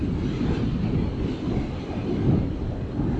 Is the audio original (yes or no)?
yes